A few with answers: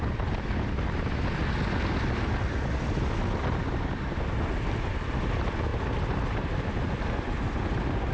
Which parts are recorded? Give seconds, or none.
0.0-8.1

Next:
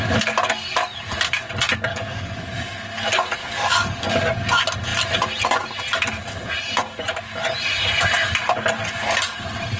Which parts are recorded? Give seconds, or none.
0.0-1.9; 2.4-3.4; 4.2-9.8